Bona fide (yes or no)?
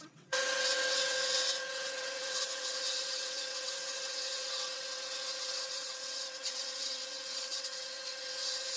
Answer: no